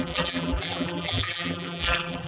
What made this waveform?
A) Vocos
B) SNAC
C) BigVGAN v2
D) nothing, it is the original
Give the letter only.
C